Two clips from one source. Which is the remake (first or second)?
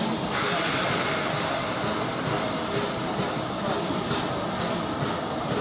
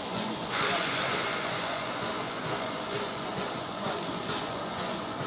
second